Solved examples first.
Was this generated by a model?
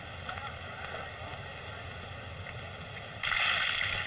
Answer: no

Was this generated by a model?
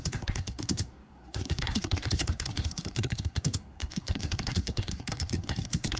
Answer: yes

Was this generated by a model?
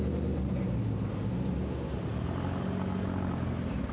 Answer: no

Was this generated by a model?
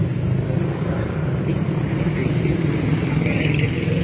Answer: no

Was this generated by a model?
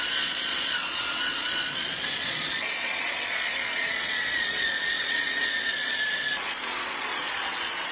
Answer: yes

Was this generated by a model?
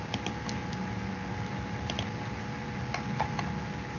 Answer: no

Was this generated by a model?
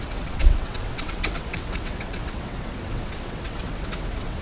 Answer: yes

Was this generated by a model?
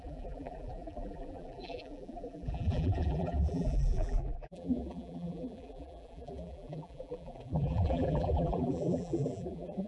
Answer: yes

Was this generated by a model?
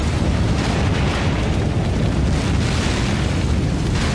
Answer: no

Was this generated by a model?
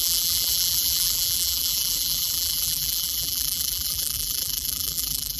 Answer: yes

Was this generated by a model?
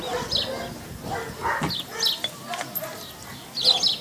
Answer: no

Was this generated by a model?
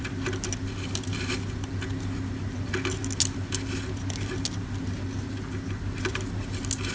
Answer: no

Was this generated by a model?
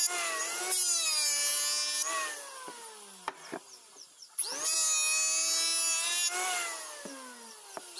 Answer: no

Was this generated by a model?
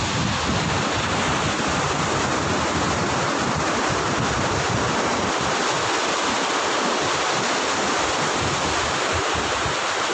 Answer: no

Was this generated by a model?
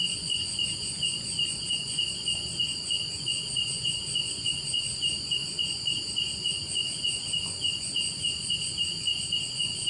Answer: yes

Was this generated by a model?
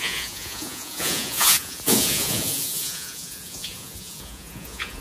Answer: yes